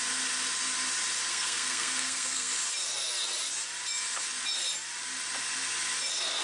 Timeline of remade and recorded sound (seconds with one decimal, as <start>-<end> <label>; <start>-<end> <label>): 0.0-1.3 recorded; 1.3-2.5 remade; 2.5-6.4 recorded